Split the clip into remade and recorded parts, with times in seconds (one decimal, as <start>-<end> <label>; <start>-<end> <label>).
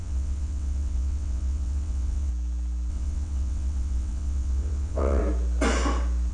0.0-2.3 remade; 2.3-2.9 recorded; 2.9-5.2 remade; 5.2-6.3 recorded